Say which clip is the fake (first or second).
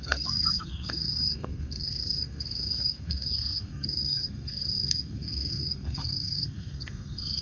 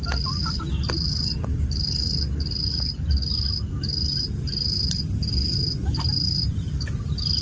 first